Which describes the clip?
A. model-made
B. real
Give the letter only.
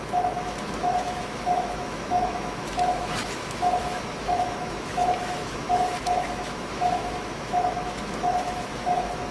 A